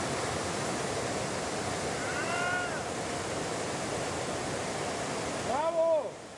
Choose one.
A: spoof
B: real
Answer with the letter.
B